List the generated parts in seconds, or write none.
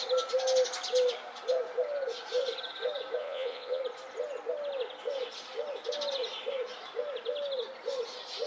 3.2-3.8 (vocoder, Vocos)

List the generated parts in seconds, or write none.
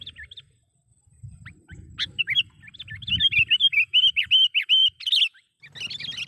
none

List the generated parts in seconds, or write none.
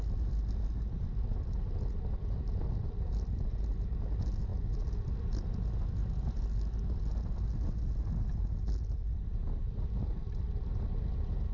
none